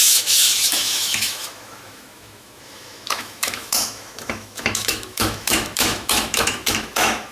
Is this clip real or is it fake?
fake